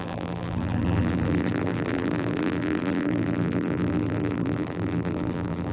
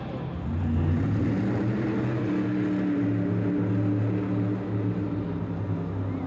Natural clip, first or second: second